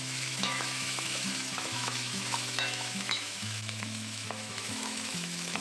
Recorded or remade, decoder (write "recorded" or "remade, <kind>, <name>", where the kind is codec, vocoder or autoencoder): remade, autoencoder, DAC-VAE